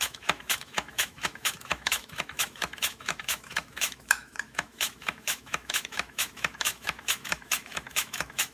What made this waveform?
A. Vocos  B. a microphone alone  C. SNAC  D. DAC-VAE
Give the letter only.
D